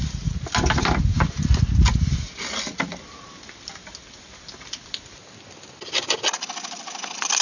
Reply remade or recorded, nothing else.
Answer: recorded